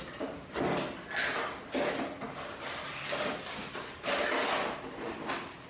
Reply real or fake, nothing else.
real